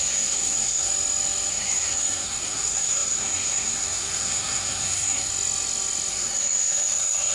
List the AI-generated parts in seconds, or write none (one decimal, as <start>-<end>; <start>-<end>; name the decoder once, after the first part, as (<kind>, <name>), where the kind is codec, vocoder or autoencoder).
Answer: 0.0-0.9 (codec, SNAC); 1.5-5.3; 6.1-7.3